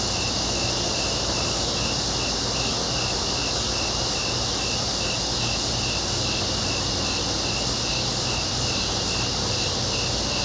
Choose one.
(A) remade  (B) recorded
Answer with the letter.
B